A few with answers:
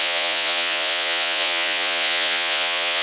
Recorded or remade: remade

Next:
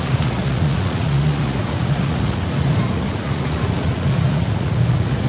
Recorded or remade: remade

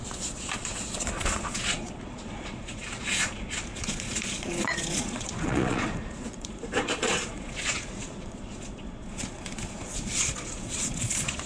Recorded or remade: remade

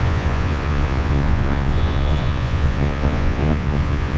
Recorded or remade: remade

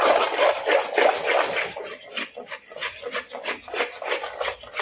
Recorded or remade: recorded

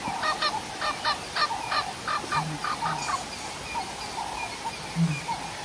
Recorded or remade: recorded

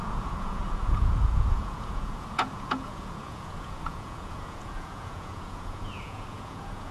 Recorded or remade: remade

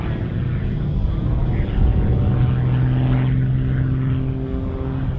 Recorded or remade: recorded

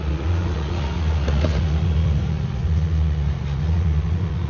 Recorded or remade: remade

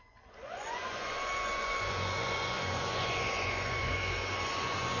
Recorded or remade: remade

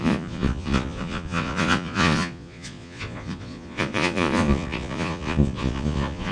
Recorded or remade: remade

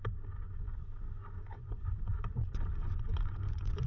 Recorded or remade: remade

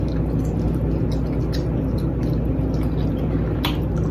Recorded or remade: recorded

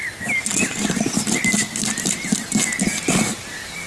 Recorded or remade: recorded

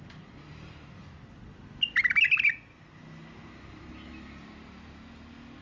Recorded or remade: recorded